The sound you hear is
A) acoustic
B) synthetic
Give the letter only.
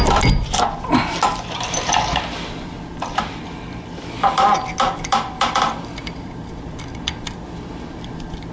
B